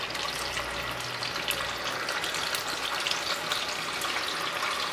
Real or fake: real